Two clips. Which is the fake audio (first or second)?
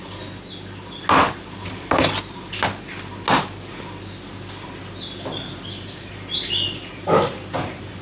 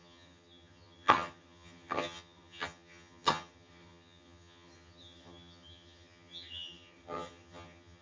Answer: second